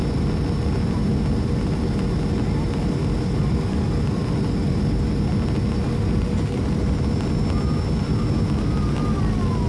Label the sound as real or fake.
real